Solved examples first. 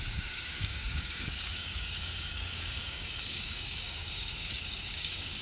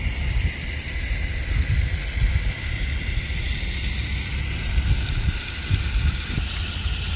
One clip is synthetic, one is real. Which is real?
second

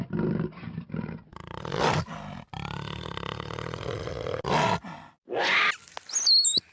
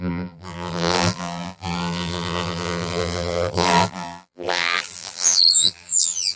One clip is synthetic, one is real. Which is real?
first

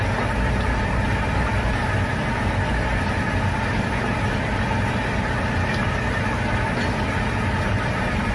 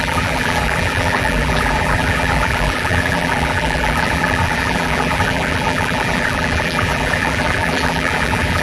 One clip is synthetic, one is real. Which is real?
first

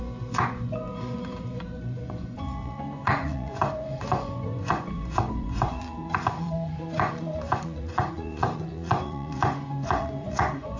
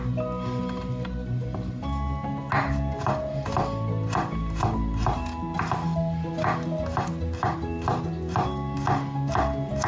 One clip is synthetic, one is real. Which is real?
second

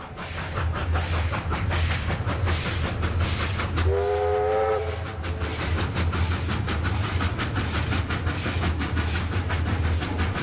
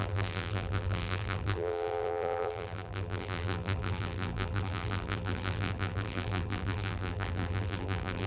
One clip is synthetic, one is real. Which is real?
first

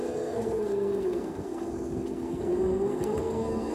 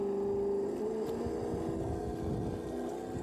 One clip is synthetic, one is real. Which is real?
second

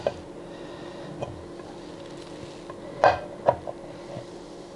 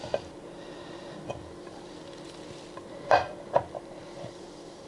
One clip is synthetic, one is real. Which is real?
first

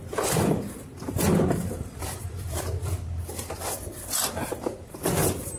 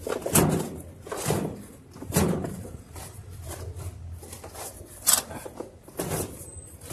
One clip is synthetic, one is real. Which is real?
first